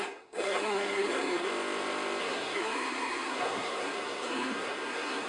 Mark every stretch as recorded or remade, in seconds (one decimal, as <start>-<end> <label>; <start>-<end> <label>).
0.0-1.5 remade; 1.5-2.2 recorded; 2.2-5.3 remade